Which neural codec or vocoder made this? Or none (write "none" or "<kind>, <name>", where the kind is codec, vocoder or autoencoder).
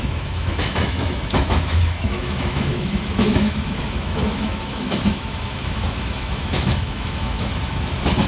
autoencoder, DAC-VAE